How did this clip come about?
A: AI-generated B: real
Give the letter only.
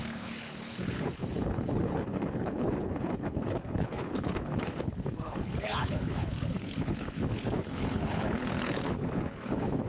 A